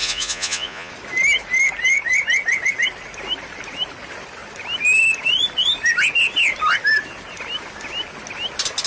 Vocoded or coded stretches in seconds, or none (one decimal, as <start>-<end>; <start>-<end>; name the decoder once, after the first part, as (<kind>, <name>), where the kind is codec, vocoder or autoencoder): 0.0-0.9 (vocoder, Vocos)